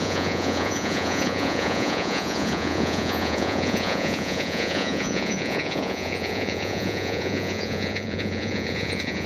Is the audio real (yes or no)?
no